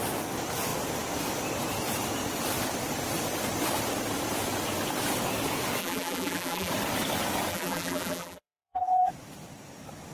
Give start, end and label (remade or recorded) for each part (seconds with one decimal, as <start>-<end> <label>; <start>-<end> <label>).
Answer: 0.0-5.8 recorded; 5.8-6.7 remade; 6.7-7.5 recorded; 7.5-9.1 remade; 9.1-10.1 recorded